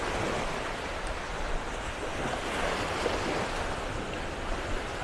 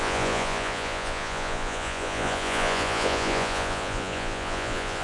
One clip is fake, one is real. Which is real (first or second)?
first